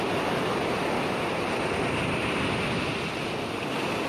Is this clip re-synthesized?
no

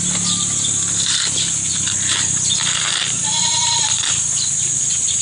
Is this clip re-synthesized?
no